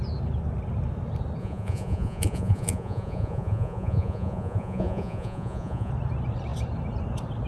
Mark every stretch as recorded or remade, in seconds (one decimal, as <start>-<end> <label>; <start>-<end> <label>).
0.0-1.4 recorded; 1.4-5.9 remade; 5.9-7.5 recorded

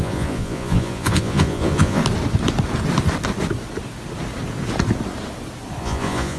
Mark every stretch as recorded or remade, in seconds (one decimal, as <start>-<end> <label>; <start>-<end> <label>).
0.0-2.0 remade; 2.0-5.8 recorded; 5.8-6.4 remade

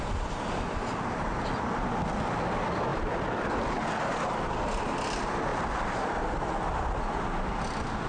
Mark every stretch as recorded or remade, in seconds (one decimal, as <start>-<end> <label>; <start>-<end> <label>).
0.0-8.1 recorded